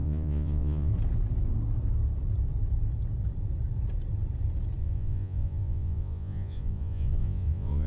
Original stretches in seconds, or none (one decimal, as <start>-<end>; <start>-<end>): 0.9-4.8